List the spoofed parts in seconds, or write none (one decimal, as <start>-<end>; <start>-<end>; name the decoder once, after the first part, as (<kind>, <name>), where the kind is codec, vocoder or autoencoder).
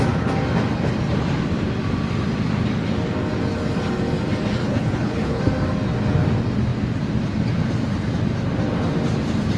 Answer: 4.6-5.4 (codec, HILCodec)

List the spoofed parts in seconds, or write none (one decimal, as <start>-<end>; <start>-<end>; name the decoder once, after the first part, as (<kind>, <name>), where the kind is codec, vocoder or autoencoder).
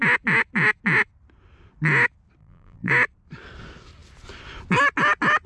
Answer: 2.4-2.9 (vocoder, BigVGAN v2)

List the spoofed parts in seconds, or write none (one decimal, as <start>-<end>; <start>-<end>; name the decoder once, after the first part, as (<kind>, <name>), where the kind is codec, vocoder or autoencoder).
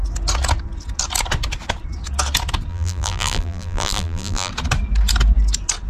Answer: 2.7-4.5 (vocoder, BigVGAN v2)